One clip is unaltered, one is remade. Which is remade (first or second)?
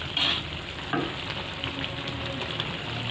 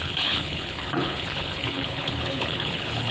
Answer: second